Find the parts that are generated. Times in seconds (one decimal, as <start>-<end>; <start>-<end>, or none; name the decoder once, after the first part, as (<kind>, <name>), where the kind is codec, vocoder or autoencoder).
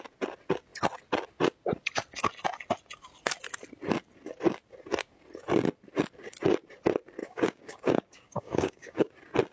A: 7.2-9.1 (codec, DAC)